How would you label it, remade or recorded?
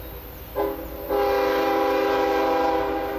recorded